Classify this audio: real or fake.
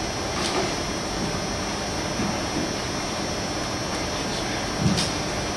real